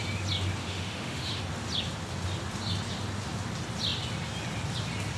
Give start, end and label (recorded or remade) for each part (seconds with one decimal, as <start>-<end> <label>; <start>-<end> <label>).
0.0-0.6 recorded; 0.6-1.4 remade; 1.4-5.2 recorded